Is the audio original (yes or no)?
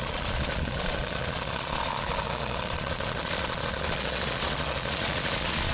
no